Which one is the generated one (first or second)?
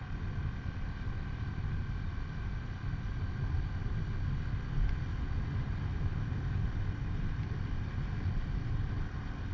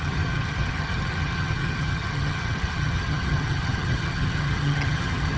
second